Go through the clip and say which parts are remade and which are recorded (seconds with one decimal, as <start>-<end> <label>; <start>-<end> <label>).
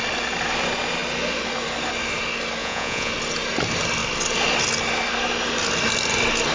0.0-2.6 recorded; 2.6-3.1 remade; 3.1-6.5 recorded